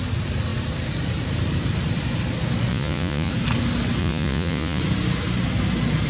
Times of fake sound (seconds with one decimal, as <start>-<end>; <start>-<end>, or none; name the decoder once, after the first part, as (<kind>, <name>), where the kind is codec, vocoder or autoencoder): 2.7-3.3 (vocoder, Vocos); 4.0-4.8